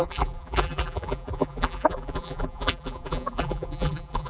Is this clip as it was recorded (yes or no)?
no